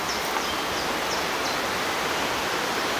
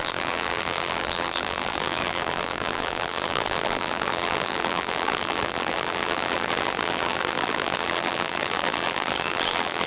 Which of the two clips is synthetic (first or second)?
second